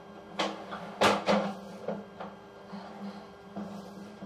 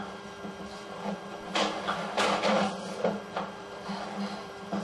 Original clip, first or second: first